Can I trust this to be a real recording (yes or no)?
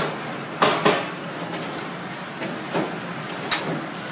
yes